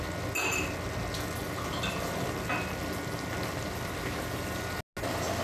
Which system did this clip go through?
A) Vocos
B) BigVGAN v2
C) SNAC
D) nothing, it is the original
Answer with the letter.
D